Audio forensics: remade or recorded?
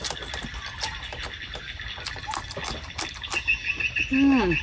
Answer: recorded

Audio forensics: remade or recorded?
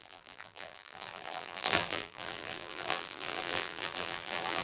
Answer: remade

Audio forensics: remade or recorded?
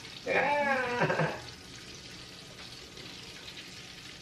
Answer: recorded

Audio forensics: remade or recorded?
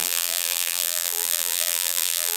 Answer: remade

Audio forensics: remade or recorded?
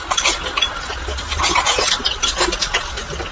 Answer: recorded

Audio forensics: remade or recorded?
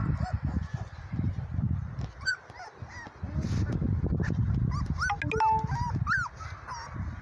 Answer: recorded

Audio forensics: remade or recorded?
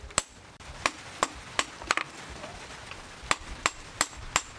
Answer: remade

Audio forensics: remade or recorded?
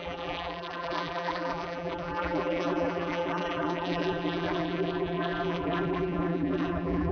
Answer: remade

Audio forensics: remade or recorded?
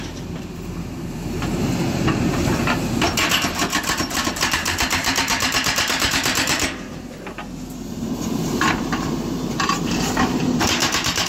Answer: remade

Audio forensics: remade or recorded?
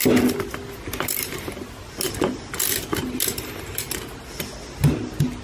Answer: recorded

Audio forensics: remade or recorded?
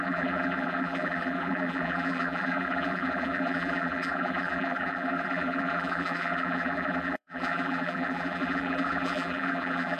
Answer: remade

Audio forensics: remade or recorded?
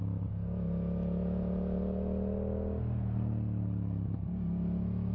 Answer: recorded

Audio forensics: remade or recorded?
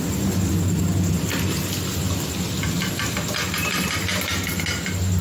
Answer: recorded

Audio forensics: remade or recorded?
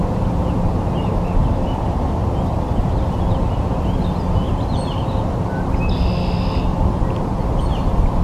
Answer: recorded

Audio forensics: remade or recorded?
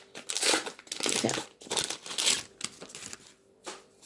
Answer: recorded